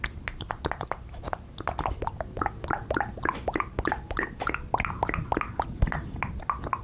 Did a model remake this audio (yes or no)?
no